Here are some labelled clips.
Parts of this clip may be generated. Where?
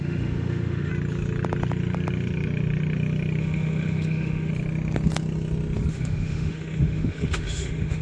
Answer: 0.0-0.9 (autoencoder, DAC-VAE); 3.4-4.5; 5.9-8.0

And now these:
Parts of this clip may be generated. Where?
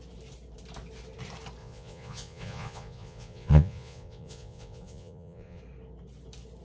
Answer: 1.6-5.6 (vocoder, Vocos)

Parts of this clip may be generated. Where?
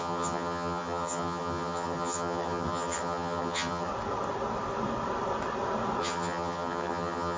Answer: 0.0-3.9 (vocoder, HiFi-GAN); 6.0-7.4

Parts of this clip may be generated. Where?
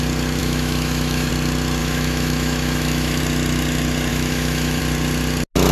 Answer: 0.4-1.3 (autoencoder, DAC-VAE); 1.8-3.2; 4.1-4.8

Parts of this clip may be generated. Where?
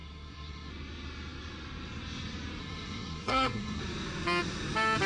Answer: 0.0-0.7 (codec, SNAC); 2.6-3.8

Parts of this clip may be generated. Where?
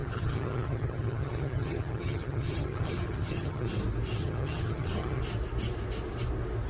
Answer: 0.0-3.7 (vocoder, HiFi-GAN); 4.2-5.2